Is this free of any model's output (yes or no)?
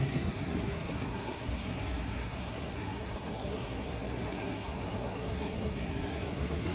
no